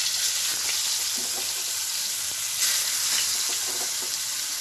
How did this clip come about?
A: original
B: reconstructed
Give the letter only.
A